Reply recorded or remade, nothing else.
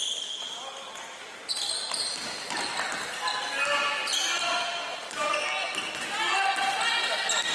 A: recorded